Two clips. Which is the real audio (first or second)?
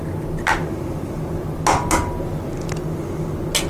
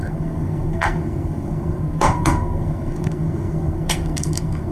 first